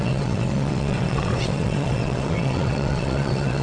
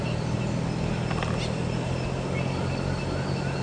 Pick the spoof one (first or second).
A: first